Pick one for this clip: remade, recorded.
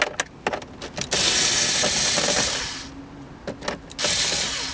recorded